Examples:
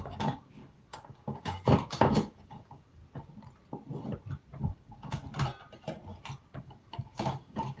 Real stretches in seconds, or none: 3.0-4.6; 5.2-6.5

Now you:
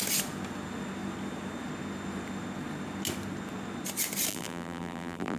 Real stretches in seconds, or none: 0.0-4.3

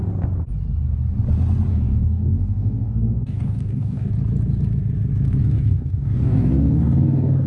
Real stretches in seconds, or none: 0.0-1.7; 4.1-5.4